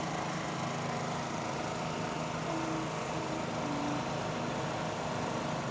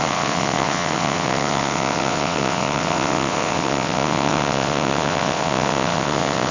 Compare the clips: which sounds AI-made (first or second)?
second